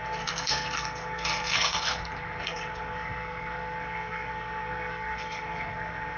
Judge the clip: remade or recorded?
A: remade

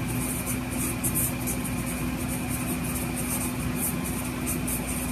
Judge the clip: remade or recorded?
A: recorded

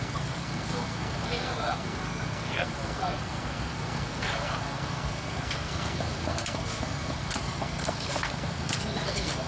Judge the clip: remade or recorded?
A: remade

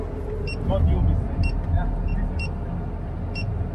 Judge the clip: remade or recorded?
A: recorded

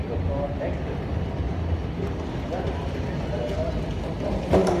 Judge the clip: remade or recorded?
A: recorded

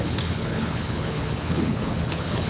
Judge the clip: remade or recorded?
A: remade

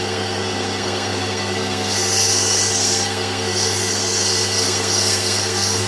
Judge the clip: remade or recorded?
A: remade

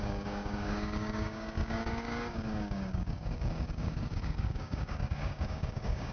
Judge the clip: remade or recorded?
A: remade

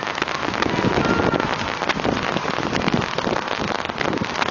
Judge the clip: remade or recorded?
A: recorded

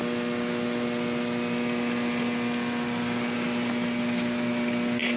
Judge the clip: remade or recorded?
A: recorded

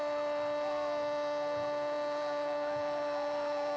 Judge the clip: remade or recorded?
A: recorded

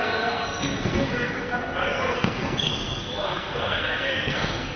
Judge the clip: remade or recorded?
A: remade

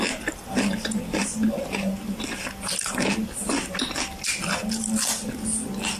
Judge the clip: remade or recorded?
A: recorded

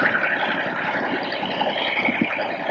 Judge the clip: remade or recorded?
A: recorded